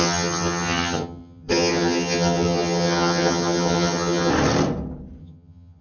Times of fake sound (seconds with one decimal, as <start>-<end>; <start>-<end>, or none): 0.0-4.3; 5.2-5.8